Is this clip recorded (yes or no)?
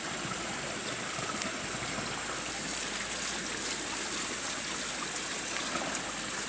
yes